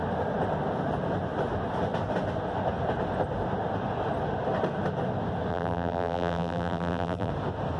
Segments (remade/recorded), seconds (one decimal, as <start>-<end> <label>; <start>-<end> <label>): 0.0-5.5 recorded; 5.5-7.3 remade; 7.3-7.8 recorded